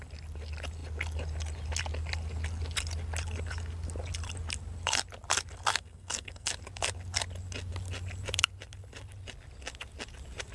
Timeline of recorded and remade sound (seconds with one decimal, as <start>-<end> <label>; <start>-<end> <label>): 0.0-5.7 recorded; 5.7-6.5 remade; 6.5-10.5 recorded